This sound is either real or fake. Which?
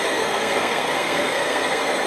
fake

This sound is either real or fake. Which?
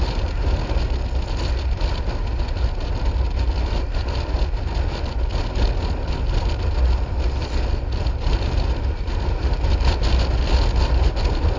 real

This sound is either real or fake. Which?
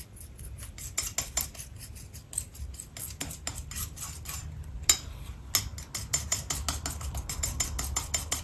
real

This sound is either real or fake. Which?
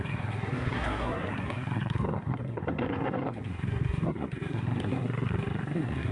fake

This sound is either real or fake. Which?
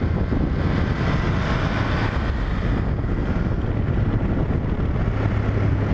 real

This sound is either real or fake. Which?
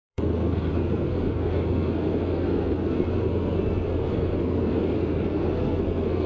fake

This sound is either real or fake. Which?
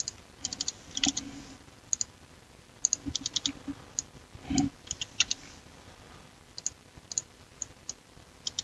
real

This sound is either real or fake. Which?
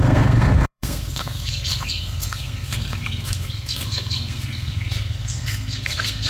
fake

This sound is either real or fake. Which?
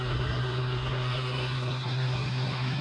fake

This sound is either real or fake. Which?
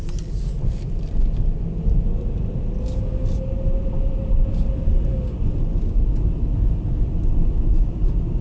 real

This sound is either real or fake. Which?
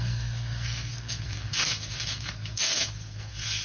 fake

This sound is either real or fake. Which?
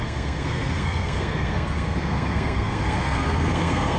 fake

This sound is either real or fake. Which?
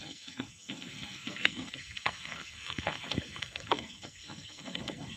fake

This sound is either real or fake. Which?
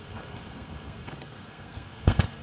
fake